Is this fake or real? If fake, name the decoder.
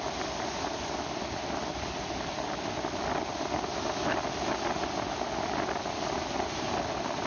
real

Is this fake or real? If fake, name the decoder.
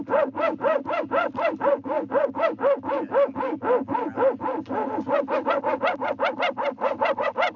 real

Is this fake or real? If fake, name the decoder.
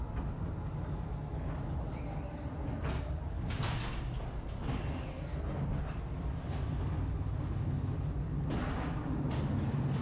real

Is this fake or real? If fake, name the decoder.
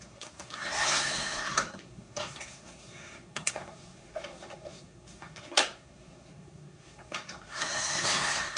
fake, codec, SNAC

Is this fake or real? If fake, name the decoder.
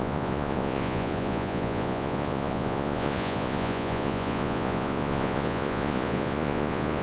fake, vocoder, Vocos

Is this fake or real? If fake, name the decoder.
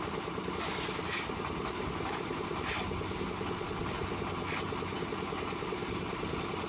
real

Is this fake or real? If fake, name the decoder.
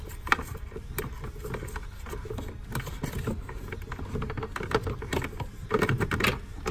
real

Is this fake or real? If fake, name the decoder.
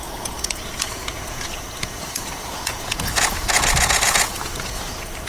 fake, vocoder, Vocos